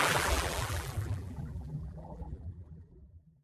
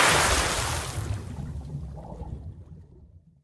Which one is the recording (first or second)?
second